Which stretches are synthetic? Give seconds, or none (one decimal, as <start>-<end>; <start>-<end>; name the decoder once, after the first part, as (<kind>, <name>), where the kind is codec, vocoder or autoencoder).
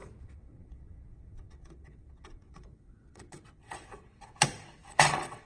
0.0-5.5 (vocoder, WaveNeXt)